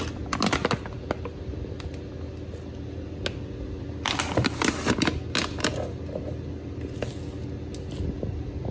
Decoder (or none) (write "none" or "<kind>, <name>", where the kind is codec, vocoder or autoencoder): none